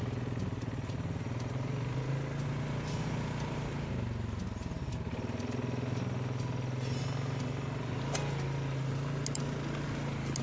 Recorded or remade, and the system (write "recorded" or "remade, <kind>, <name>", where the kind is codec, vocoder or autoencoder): recorded